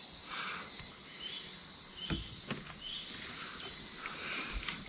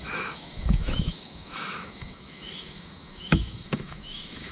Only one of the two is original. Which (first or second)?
first